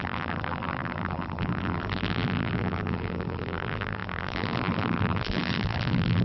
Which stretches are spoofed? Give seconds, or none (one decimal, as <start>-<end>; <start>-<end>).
0.0-6.2